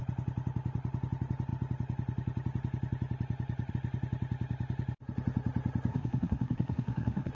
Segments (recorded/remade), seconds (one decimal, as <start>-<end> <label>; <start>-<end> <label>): 0.0-5.9 recorded; 5.9-7.3 remade